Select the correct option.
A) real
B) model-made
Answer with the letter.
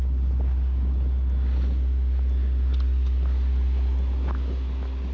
A